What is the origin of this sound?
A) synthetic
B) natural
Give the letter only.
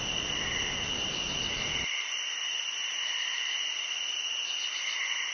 B